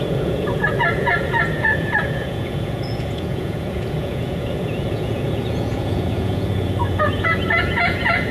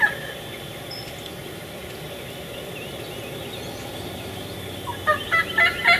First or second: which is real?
second